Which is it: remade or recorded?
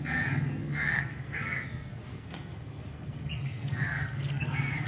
remade